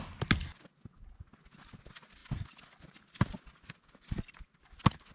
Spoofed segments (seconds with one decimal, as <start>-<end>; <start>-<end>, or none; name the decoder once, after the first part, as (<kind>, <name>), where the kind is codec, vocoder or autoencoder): none